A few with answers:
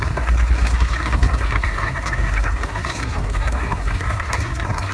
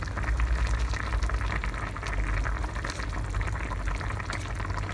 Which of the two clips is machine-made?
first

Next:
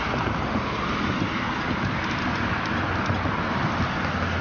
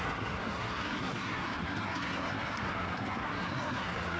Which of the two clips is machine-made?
second